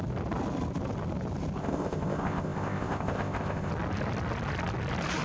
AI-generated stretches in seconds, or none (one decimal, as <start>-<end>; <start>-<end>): 1.6-3.7